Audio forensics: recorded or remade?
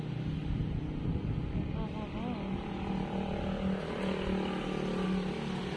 recorded